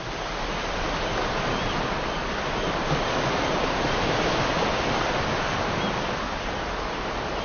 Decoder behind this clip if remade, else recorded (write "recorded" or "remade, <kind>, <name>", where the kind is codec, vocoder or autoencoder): recorded